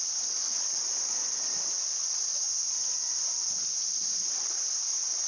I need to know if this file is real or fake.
real